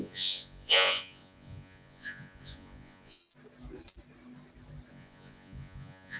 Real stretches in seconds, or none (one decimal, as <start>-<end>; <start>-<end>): 3.2-4.9

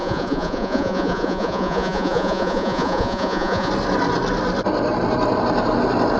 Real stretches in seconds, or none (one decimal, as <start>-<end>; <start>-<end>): 3.7-6.2

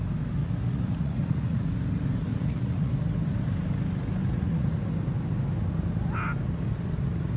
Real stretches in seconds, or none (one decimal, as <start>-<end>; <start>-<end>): 0.0-0.4; 1.6-2.3; 2.9-4.3; 4.8-7.4

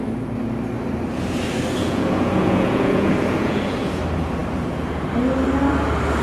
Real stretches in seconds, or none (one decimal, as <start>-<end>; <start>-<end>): 0.0-1.8; 4.0-6.2

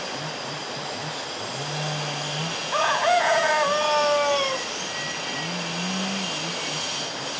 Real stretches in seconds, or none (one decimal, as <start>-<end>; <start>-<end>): 0.0-2.6; 3.5-7.4

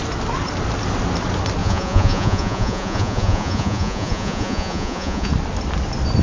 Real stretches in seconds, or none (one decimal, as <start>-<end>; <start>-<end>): 0.0-1.6; 5.3-6.2

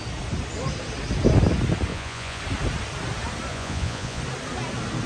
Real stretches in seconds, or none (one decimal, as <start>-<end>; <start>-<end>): 0.0-1.9; 2.4-3.5; 4.2-5.1

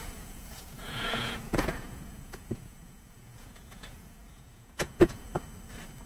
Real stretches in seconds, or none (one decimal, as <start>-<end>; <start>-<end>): 5.3-6.1